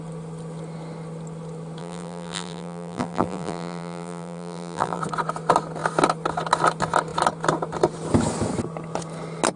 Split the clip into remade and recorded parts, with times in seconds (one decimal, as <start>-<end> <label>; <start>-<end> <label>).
0.0-1.8 recorded; 1.8-5.0 remade; 5.0-9.6 recorded